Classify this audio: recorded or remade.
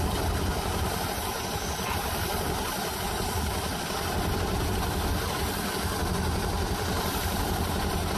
remade